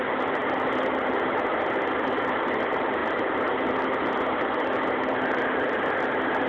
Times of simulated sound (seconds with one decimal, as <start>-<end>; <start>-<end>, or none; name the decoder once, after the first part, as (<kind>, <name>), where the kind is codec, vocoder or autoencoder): none